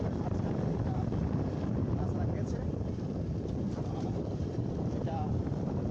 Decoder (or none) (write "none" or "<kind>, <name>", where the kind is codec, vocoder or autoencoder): vocoder, BigVGAN v2